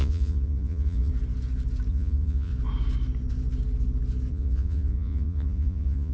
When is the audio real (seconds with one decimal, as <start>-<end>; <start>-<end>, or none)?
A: 1.1-1.9; 2.5-4.3